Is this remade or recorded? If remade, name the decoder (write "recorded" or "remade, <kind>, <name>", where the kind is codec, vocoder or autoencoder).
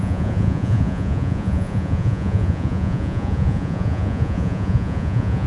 remade, vocoder, Vocos